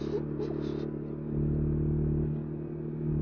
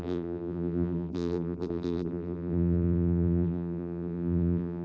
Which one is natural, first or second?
first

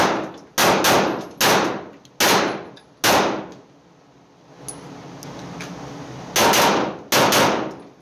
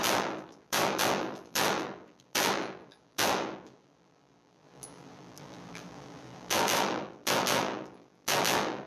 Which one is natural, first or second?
first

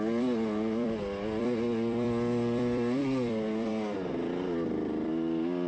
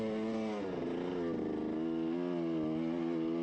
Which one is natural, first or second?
second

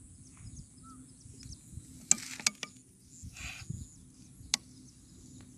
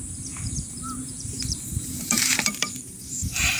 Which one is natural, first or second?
first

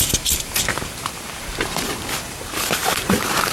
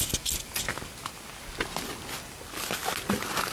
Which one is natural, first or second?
second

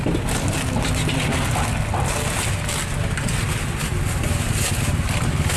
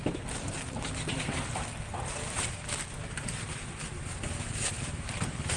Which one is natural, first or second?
first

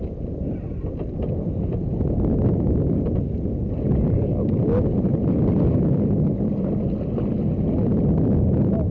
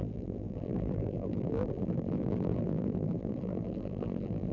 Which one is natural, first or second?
first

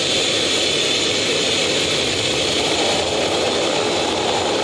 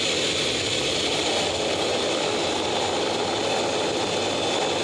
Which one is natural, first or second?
second